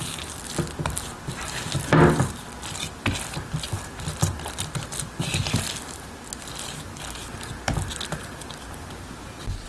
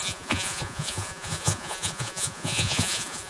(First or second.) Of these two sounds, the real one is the first